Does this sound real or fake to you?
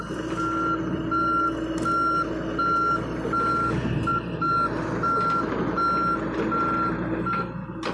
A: real